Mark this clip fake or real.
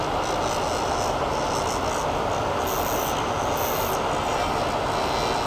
real